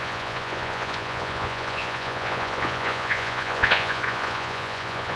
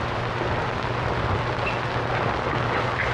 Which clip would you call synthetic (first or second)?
first